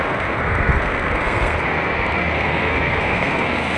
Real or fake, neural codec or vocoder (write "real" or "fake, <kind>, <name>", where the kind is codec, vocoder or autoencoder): fake, codec, SNAC